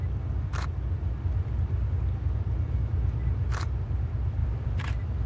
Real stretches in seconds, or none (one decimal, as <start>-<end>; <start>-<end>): 0.0-4.4